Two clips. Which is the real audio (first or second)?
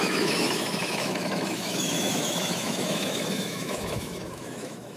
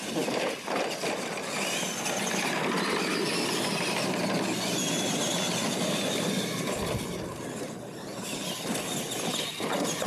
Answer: second